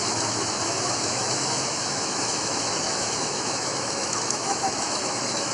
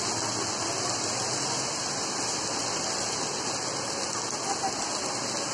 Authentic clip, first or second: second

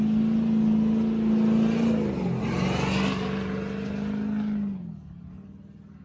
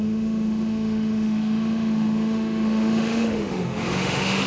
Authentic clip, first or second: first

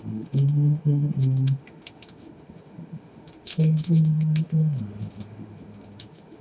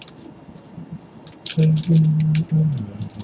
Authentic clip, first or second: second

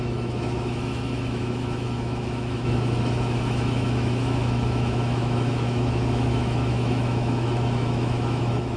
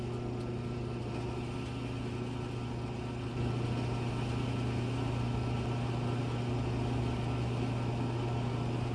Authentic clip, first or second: second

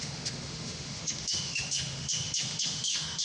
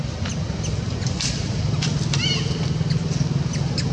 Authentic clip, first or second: second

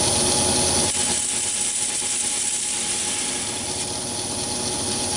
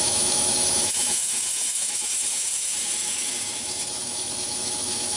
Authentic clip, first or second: first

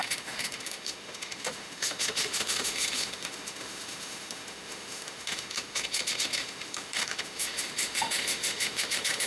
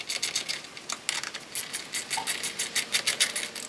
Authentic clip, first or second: second